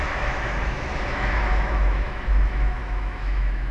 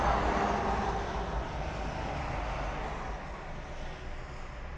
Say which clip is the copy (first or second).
first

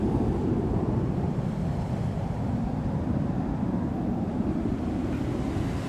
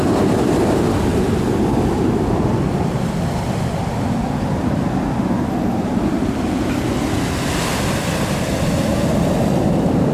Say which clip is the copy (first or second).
first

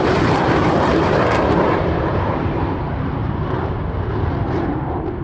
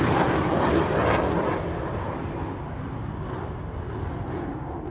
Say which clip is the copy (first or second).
first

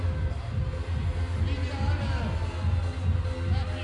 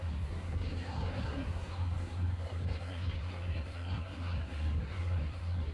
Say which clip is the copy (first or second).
second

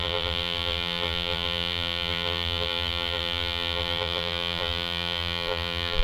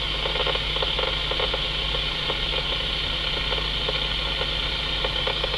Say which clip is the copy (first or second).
first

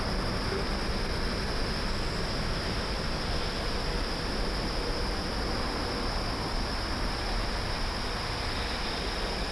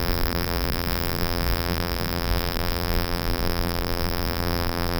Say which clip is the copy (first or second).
second